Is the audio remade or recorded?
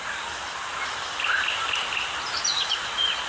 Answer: recorded